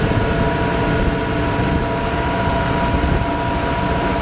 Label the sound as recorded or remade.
recorded